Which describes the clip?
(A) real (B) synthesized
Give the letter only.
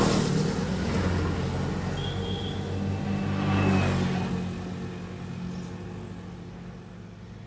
A